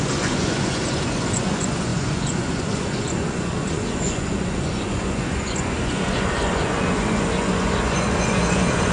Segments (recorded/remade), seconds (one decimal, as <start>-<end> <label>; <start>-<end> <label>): 0.0-8.9 remade